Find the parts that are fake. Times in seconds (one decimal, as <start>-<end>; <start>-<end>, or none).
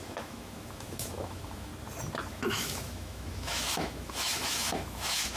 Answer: 0.0-1.7; 2.3-5.4